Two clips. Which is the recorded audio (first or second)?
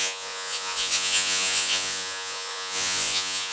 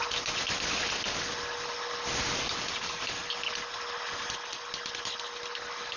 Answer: second